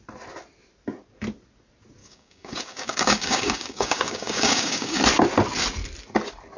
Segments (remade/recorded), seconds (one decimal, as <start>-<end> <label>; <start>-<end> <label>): 0.0-2.0 recorded; 2.0-5.0 remade; 5.0-6.6 recorded